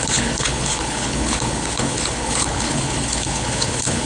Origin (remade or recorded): remade